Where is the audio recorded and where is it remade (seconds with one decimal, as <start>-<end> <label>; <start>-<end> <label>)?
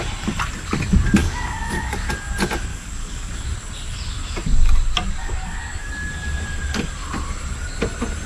0.0-1.2 recorded; 1.2-2.1 remade; 2.1-2.7 recorded; 2.7-3.3 remade; 3.3-5.2 recorded; 5.2-5.9 remade; 5.9-8.3 recorded